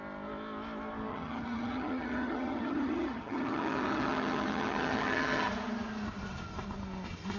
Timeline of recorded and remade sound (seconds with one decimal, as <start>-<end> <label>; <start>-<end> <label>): 0.0-1.1 recorded; 1.1-5.5 remade; 5.5-7.4 recorded